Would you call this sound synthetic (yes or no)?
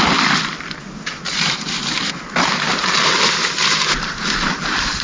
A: yes